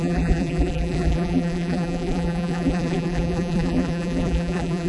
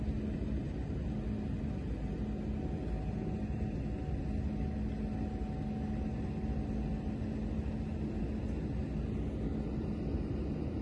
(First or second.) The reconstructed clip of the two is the first